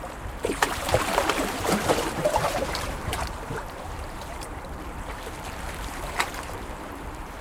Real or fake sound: fake